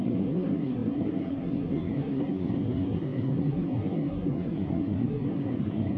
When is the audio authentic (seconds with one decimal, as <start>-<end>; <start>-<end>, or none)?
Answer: none